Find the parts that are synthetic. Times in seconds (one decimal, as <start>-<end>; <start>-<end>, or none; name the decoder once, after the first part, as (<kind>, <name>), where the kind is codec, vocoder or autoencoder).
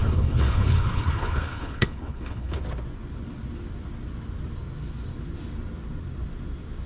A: 0.0-2.6 (codec, HILCodec)